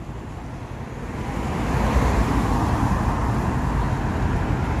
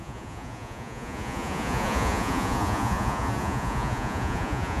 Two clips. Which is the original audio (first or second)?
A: first